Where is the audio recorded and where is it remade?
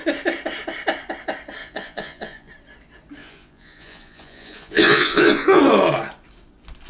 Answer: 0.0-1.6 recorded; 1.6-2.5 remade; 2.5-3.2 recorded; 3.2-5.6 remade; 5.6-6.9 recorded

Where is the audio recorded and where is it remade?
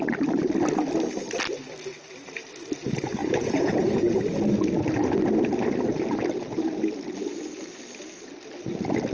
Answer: 0.0-3.2 recorded; 3.2-4.2 remade; 4.2-9.1 recorded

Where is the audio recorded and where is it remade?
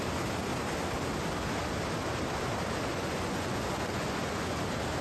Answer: 0.0-2.9 recorded; 2.9-4.6 remade; 4.6-5.0 recorded